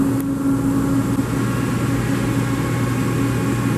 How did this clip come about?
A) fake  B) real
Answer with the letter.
B